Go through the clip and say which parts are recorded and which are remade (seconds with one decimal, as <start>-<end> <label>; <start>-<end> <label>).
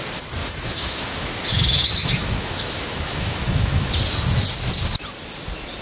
0.0-0.4 recorded; 0.4-3.9 remade; 3.9-5.8 recorded